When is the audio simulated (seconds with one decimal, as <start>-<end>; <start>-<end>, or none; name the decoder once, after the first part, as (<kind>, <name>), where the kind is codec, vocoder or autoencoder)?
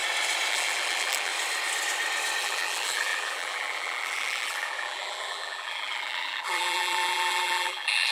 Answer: 0.5-1.3 (vocoder, BigVGAN v2); 2.4-8.1